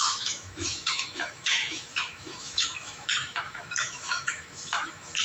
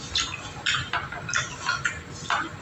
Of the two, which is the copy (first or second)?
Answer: first